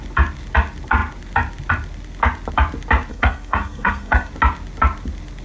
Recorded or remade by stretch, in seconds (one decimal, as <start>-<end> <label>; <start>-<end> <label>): 0.0-3.1 recorded; 3.1-4.3 remade; 4.3-5.4 recorded